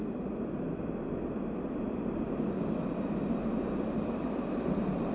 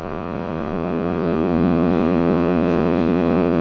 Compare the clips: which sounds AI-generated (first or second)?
second